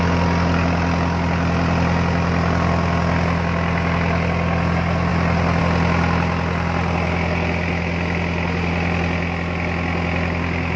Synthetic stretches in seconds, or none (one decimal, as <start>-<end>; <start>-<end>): none